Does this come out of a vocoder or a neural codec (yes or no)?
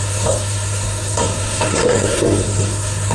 yes